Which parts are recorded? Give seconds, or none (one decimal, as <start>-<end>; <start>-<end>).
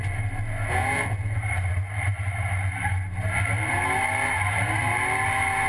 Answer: 0.0-0.6; 1.3-5.7